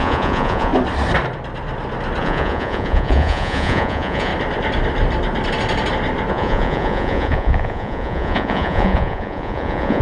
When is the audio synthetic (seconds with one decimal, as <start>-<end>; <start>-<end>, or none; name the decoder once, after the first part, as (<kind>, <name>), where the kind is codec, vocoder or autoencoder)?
0.0-0.7 (vocoder, Vocos); 2.2-4.3; 6.3-10.0